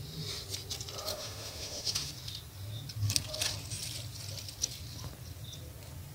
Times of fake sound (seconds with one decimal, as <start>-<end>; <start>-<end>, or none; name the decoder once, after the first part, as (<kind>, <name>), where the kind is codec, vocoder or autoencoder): 1.1-2.1 (autoencoder, DAC-VAE)